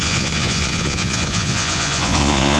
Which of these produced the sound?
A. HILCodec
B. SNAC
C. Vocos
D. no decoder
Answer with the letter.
C